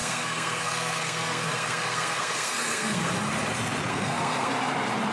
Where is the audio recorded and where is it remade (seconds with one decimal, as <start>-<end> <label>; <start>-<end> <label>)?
0.0-3.1 remade; 3.1-3.9 recorded; 3.9-4.5 remade; 4.5-5.1 recorded